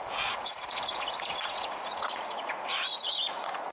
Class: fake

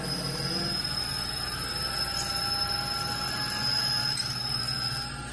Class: real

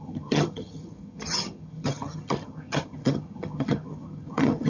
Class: fake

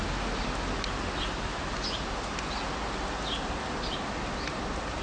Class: real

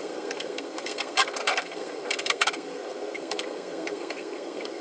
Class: fake